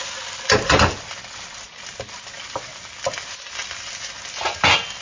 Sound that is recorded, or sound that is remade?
recorded